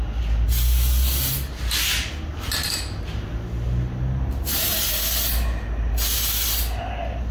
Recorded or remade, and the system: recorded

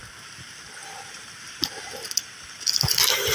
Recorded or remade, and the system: recorded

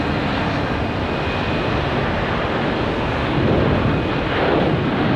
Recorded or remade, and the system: recorded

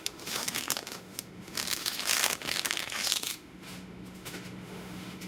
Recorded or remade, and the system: remade, autoencoder, DAC-VAE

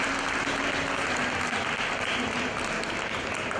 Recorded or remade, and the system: recorded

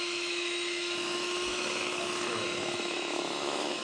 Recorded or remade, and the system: remade, autoencoder, DAC-VAE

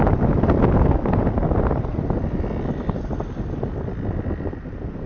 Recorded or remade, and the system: recorded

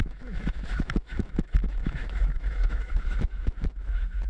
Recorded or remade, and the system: remade, autoencoder, DAC-VAE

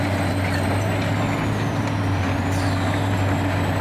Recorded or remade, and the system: recorded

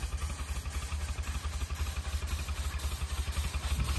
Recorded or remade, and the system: recorded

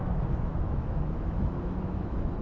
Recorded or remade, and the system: remade, autoencoder, DAC-VAE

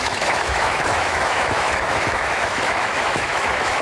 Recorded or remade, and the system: remade, autoencoder, DAC-VAE